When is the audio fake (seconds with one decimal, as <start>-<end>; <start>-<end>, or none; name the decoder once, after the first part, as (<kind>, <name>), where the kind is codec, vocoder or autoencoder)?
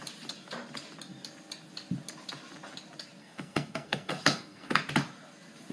3.2-4.8 (codec, SNAC)